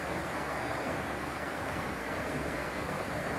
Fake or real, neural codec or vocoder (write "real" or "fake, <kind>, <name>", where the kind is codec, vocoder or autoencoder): fake, codec, SNAC